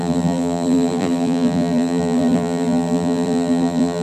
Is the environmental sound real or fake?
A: fake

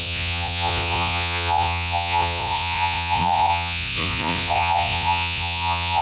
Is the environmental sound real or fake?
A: fake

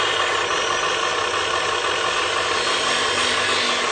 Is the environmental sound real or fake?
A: real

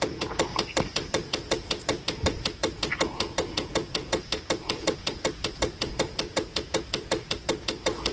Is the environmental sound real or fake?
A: fake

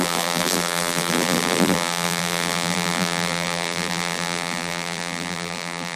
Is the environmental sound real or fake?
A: fake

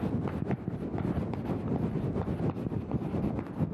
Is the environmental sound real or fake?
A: real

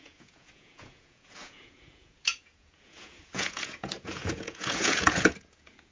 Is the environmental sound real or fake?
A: fake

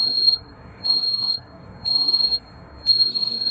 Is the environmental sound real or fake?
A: fake